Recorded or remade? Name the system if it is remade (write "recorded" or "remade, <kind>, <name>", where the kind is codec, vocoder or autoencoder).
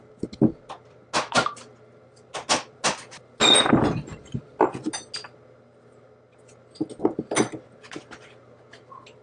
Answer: recorded